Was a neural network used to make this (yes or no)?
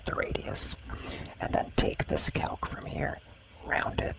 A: yes